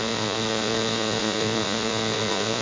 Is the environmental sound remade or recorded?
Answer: remade